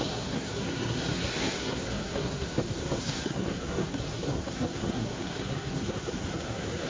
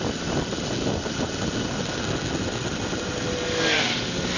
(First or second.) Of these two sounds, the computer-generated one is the first